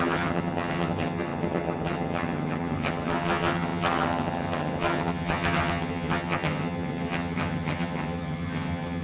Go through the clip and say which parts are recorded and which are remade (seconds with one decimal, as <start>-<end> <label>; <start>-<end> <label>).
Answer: 0.0-9.0 remade